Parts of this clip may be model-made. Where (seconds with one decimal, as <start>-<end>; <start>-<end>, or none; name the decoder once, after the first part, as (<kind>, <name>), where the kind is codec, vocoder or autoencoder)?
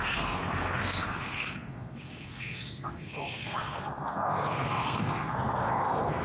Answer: 0.0-6.2 (codec, SNAC)